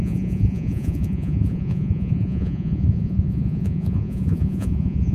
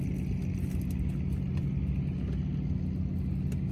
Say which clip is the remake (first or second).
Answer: first